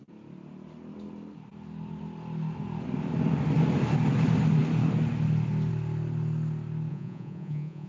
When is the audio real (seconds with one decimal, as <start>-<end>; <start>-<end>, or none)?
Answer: 0.0-6.9